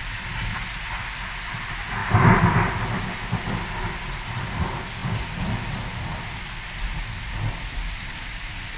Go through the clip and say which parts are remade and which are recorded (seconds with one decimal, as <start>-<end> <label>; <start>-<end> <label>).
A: 0.0-8.8 recorded